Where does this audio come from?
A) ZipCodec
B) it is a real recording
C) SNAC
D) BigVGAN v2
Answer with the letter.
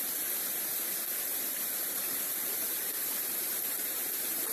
D